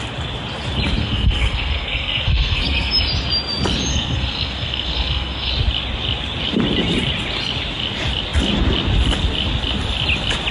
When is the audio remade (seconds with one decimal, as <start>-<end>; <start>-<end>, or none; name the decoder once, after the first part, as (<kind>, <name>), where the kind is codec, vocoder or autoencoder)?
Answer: 1.0-2.9 (codec, SNAC); 3.9-5.5